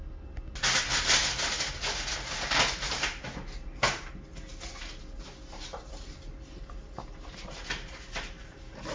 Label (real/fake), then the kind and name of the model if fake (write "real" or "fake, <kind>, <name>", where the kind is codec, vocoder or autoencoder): real